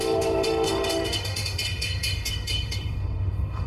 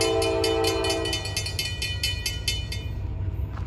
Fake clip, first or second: first